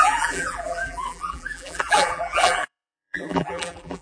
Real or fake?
fake